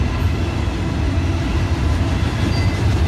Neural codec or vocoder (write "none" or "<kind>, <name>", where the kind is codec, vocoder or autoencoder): none